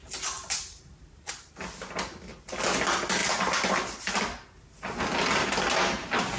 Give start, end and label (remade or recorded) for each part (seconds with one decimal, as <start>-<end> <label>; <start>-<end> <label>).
0.0-0.4 recorded; 0.4-1.3 remade; 1.3-6.4 recorded